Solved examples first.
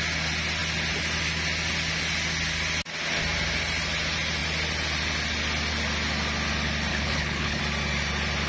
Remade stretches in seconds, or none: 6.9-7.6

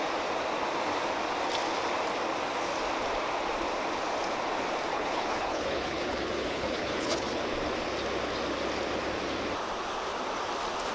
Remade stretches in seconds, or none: 4.9-7.4

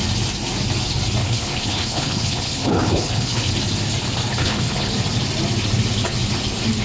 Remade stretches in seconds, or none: 1.2-3.5; 4.3-4.9